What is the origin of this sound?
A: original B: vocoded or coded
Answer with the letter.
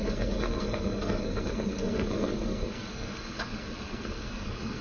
B